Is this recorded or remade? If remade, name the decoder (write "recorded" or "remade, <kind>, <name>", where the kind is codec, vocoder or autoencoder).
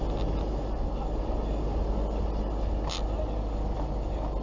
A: recorded